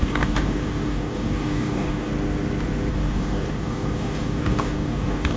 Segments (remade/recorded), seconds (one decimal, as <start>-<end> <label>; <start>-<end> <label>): 0.0-2.1 remade; 2.1-2.9 recorded; 2.9-5.4 remade